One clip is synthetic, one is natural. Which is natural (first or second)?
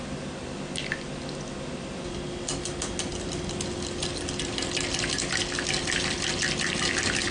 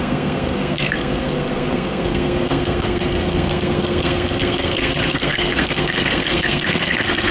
first